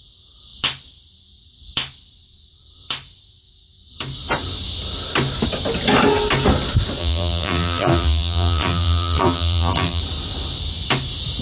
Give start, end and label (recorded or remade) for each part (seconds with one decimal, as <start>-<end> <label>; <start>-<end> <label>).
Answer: 0.0-7.0 recorded; 7.0-10.0 remade; 10.0-11.4 recorded